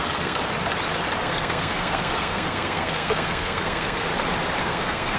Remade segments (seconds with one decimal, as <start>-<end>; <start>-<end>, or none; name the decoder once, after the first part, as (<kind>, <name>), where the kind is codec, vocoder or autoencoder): 0.0-0.4 (codec, SNAC); 1.2-4.1; 4.6-5.2